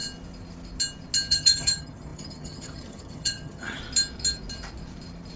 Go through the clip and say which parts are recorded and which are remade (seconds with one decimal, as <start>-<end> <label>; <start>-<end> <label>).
0.0-1.3 recorded; 1.3-3.8 remade; 3.8-5.4 recorded